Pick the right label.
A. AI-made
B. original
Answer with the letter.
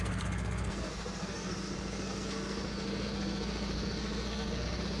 A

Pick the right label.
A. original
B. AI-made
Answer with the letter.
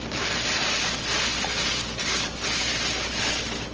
A